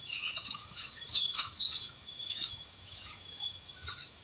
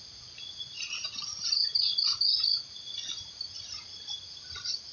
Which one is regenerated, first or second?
first